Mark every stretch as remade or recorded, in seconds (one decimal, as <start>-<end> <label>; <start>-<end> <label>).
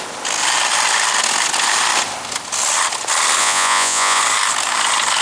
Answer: 0.0-3.4 recorded; 3.4-4.2 remade; 4.2-5.2 recorded